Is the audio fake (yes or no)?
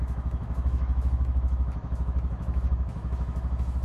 yes